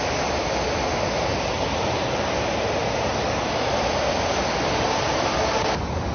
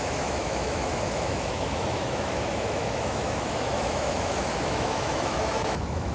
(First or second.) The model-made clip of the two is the second